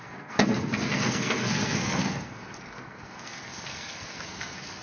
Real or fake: fake